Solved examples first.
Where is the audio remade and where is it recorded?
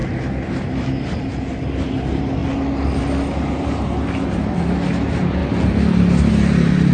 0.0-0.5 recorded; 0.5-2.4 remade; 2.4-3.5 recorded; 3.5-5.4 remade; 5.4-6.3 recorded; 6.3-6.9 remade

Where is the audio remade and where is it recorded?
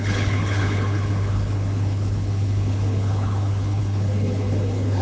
0.0-5.0 remade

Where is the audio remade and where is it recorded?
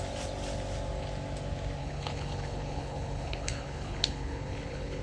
0.0-1.8 recorded; 1.8-5.0 remade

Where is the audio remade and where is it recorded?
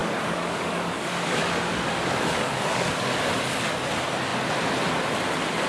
0.0-3.3 remade; 3.3-5.7 recorded